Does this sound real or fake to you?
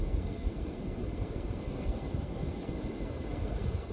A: fake